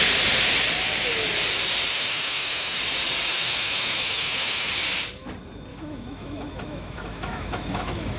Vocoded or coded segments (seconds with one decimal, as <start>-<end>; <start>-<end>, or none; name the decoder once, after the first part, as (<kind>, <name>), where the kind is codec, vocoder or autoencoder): 1.9-2.8 (autoencoder, DAC-VAE); 3.3-4.7; 5.7-8.2